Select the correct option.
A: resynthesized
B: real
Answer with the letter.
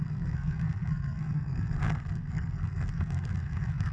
A